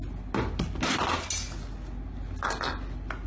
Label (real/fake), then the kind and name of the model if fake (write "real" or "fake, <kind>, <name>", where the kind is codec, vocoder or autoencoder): real